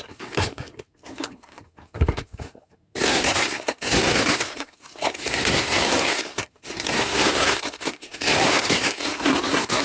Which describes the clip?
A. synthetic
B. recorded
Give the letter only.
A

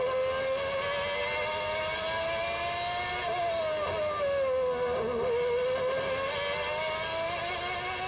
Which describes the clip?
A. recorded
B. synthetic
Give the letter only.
A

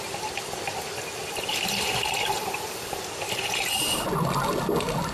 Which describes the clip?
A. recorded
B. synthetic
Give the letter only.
A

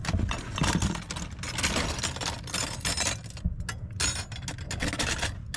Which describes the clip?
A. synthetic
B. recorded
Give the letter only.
B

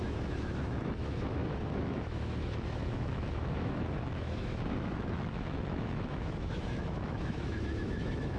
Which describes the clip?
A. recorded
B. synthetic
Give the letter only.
B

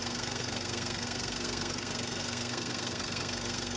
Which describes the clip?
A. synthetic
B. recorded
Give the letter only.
A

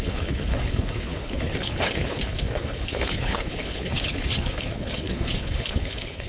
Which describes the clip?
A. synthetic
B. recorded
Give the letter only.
A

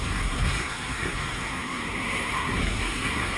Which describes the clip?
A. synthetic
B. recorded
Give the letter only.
A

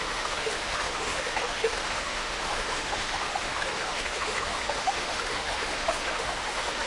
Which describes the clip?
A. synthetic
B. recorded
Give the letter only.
A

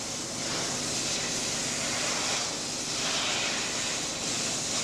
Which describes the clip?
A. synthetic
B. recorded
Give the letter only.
B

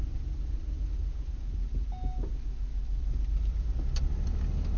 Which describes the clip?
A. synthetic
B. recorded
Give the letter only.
B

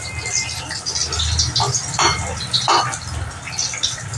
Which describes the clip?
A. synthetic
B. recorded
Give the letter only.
B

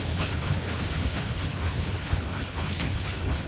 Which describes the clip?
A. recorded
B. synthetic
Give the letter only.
B